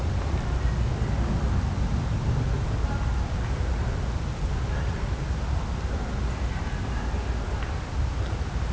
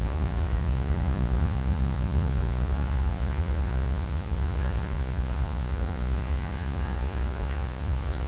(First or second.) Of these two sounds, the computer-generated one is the second